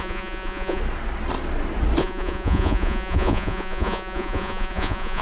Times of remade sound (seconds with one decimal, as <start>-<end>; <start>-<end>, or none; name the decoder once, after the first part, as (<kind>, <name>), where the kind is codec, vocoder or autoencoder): 0.0-0.8 (vocoder, Vocos); 2.0-5.2

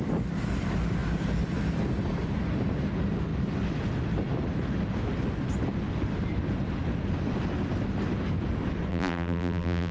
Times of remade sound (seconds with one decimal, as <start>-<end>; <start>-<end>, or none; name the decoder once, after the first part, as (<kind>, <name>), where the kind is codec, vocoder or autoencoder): 8.9-9.9 (vocoder, BigVGAN v2)

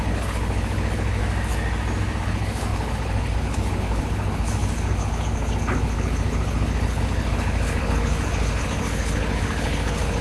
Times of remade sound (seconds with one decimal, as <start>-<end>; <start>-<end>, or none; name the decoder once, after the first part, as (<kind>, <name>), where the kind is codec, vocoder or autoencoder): 0.0-1.2 (codec, HILCodec); 2.2-10.2

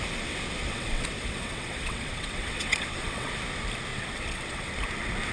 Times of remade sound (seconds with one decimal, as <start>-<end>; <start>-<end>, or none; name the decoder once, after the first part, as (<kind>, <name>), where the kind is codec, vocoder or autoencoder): 0.7-3.3 (vocoder, WaveNeXt); 3.9-4.7